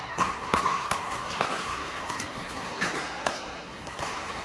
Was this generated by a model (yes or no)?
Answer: yes